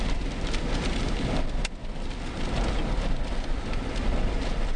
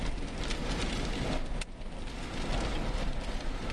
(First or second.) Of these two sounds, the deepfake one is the first